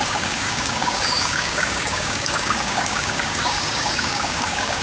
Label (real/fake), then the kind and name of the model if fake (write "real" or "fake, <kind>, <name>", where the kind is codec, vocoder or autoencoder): fake, codec, DAC